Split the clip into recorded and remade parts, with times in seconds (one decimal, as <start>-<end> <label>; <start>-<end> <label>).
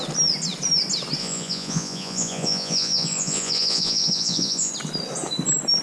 0.0-1.2 recorded; 1.2-4.7 remade; 4.7-5.8 recorded